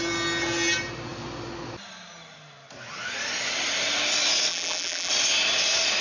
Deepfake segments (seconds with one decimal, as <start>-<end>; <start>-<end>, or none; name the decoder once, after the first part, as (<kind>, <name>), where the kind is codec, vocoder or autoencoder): 4.5-5.1 (vocoder, BigVGAN v2)